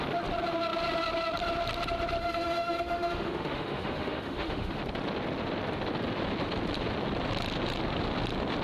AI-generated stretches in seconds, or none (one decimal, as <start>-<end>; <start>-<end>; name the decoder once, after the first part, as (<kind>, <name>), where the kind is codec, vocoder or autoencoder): 2.2-4.8 (autoencoder, DAC-VAE)